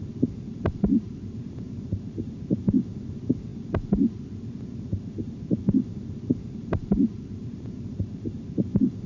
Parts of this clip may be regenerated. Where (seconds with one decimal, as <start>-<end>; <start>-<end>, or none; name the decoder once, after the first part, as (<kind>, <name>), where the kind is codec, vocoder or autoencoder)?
0.0-3.5 (vocoder, BigVGAN v2); 4.8-9.1